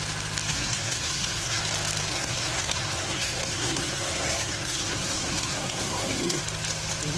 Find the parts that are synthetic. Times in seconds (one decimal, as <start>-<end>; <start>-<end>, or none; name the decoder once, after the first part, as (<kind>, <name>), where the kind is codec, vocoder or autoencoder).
0.5-1.6 (codec, SNAC); 2.1-6.4